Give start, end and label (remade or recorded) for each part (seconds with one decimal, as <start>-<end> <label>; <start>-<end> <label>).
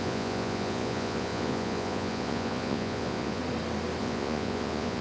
0.0-3.4 remade; 3.4-4.0 recorded; 4.0-5.0 remade